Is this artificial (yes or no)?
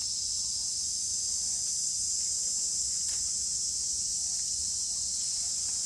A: yes